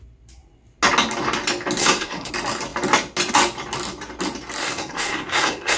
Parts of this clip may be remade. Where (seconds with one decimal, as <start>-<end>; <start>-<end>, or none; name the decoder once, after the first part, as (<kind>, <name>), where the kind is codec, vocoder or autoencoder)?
1.8-2.3 (codec, SNAC); 4.6-5.8